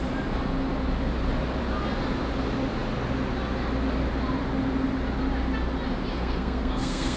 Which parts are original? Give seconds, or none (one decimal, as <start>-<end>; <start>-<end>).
0.0-6.1